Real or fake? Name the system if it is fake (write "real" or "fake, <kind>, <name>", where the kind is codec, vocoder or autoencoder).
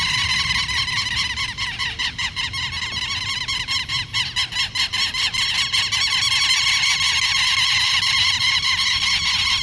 real